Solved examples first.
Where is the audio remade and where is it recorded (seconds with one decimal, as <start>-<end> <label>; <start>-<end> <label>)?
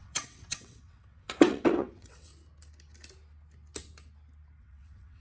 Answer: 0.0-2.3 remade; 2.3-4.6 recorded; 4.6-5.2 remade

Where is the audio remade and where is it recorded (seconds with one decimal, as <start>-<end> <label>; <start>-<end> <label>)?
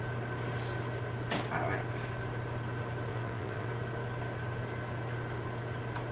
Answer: 0.0-3.1 recorded; 3.1-3.7 remade; 3.7-6.1 recorded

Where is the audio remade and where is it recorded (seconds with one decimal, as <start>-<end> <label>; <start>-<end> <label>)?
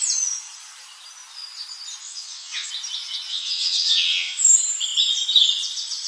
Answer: 0.0-2.0 recorded; 2.0-2.7 remade; 2.7-3.3 recorded; 3.3-4.4 remade; 4.4-6.1 recorded